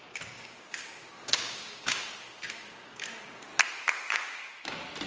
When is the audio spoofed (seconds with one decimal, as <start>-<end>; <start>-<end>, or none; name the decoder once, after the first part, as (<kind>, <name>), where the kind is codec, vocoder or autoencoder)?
0.0-3.5 (codec, DAC); 4.1-4.5